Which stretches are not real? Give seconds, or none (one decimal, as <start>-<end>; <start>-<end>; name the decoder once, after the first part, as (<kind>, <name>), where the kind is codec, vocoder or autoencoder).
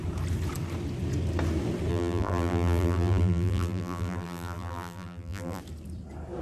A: 1.9-5.6 (vocoder, BigVGAN v2)